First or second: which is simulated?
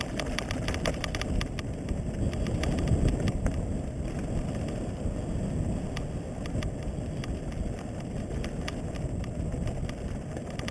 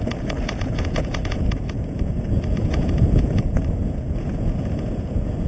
second